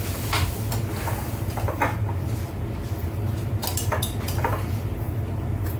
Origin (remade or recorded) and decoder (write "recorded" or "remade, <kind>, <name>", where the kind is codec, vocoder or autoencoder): recorded